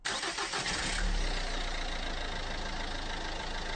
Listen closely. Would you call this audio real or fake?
real